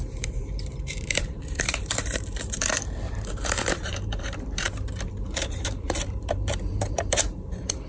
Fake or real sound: fake